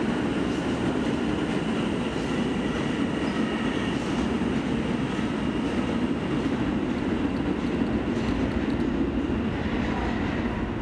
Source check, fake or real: real